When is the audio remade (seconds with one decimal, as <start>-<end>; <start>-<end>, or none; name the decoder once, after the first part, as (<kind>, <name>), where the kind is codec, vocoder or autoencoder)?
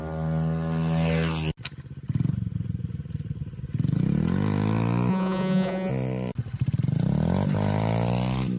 5.1-5.9 (vocoder, Vocos)